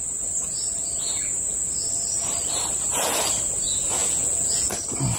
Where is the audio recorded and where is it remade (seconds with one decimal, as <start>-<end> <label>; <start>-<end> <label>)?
0.0-4.0 recorded; 4.0-4.7 remade; 4.7-5.2 recorded